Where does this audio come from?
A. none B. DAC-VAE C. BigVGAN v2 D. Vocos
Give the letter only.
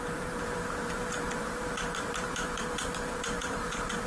C